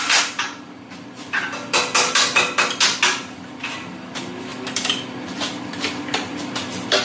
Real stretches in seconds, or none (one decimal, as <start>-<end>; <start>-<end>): 0.0-7.0